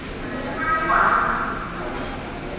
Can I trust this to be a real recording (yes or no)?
yes